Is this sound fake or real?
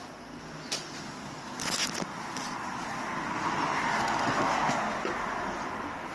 real